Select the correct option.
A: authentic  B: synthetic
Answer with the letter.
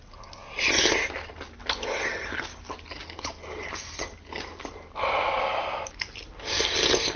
A